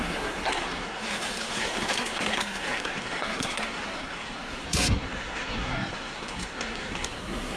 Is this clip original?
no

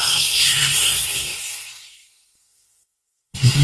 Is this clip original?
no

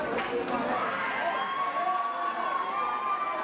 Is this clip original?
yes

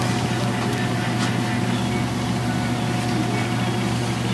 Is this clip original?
yes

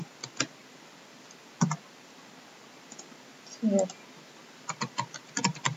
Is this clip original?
yes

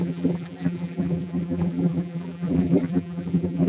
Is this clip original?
no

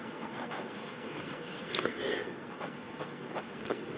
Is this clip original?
no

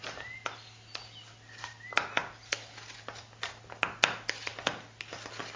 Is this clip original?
yes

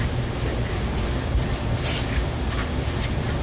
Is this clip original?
yes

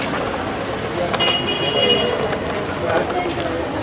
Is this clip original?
yes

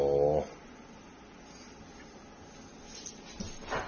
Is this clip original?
yes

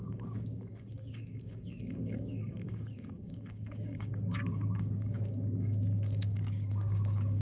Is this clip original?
no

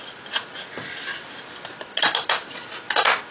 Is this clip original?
yes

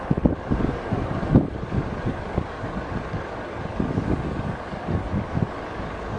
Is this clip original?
no